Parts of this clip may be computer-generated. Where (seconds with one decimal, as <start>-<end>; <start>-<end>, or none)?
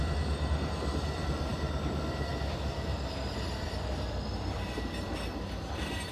0.0-6.1